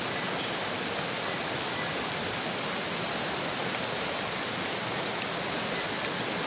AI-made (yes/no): no